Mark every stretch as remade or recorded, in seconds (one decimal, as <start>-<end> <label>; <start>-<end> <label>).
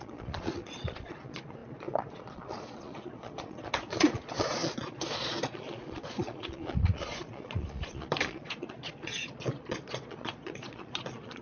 0.0-11.4 remade